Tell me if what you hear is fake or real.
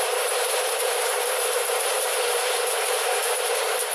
fake